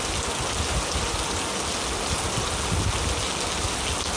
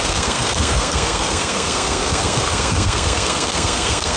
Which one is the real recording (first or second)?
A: first